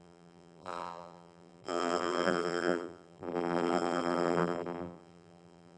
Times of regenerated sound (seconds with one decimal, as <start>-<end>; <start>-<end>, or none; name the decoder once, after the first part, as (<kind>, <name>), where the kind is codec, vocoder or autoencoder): 0.0-5.8 (vocoder, BigVGAN v2)